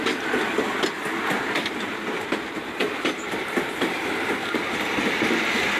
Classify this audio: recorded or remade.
recorded